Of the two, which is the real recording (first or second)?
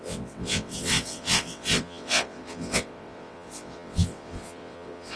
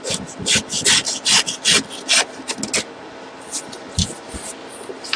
second